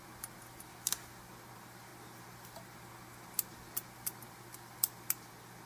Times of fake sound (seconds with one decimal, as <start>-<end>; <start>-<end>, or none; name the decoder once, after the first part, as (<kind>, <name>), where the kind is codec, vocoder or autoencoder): none